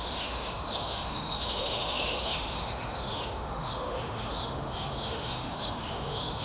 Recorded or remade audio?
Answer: remade